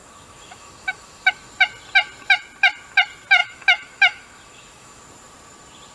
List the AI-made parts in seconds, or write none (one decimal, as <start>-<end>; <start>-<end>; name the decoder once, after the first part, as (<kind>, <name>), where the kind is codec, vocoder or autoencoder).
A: 0.0-1.5 (autoencoder, DAC-VAE); 3.4-5.0

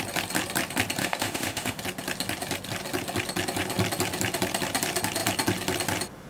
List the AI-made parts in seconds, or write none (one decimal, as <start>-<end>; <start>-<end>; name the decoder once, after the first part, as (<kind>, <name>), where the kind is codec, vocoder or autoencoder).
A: 1.0-1.8 (autoencoder, DAC-VAE)

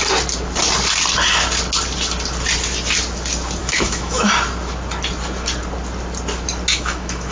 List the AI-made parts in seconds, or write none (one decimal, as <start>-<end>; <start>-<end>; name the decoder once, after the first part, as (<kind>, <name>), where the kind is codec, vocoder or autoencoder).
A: 3.6-4.3 (autoencoder, DAC-VAE); 6.7-7.3

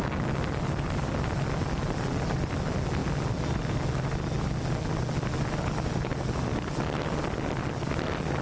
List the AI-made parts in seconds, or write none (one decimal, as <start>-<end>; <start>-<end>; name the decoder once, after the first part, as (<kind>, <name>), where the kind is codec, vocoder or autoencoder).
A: none

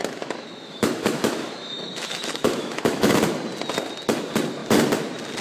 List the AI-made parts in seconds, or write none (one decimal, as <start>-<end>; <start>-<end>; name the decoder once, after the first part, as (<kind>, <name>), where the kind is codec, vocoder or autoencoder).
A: 0.0-3.2 (autoencoder, DAC-VAE)

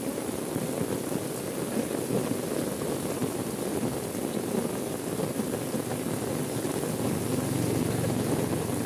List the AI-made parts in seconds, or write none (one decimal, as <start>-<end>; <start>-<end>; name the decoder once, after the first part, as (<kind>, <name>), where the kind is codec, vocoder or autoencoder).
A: none

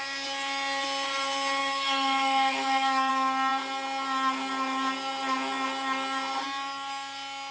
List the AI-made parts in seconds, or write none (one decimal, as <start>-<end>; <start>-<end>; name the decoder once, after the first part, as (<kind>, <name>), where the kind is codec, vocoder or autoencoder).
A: 1.6-3.1 (autoencoder, DAC-VAE)